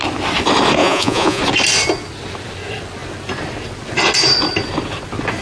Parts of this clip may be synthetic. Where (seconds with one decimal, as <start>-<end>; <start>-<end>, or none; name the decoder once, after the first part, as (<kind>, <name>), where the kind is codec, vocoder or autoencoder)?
0.8-1.4 (vocoder, Vocos)